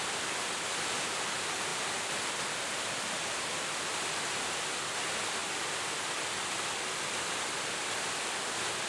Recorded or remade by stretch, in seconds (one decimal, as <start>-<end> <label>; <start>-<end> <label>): 0.0-8.9 recorded